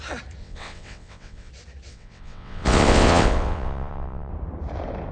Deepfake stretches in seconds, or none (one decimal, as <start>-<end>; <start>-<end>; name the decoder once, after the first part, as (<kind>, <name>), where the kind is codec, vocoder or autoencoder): 0.4-1.5 (vocoder, WaveNeXt); 1.9-4.3